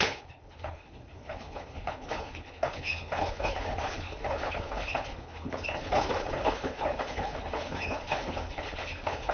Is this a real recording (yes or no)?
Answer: no